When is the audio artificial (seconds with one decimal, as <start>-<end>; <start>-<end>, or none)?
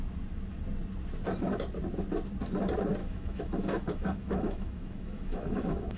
3.0-6.0